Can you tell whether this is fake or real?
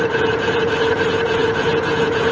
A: fake